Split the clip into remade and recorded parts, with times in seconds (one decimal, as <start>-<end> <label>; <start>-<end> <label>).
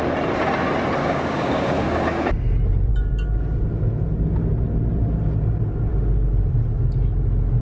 0.0-1.0 recorded; 1.0-2.3 remade; 2.3-7.6 recorded